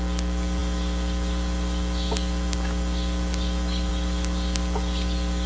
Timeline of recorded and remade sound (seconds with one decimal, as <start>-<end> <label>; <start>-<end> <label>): 0.0-5.5 recorded